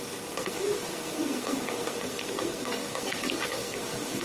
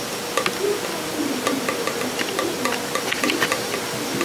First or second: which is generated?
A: first